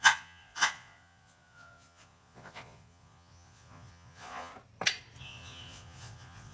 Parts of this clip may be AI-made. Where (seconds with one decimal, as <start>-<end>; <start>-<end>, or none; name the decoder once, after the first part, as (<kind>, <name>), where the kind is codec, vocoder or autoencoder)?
0.0-4.5 (vocoder, Vocos); 5.2-6.5